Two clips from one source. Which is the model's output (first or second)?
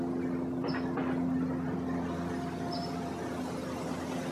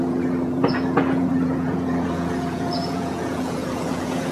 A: second